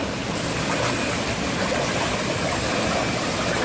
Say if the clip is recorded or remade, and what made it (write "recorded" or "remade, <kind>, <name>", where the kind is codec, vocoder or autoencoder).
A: recorded